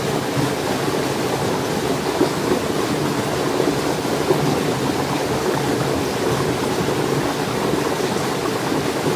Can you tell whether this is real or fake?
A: real